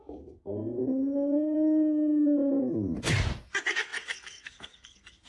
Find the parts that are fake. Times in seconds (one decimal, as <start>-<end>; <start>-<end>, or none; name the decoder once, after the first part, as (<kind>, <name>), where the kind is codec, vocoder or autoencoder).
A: 0.0-0.8 (codec, SNAC); 3.4-5.3